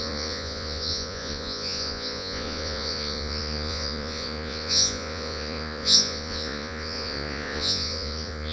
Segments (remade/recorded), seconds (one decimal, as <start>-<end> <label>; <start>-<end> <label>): 0.0-8.5 remade